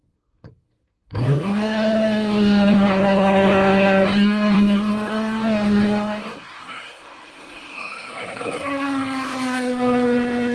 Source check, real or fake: fake